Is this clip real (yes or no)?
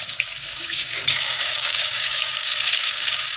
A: no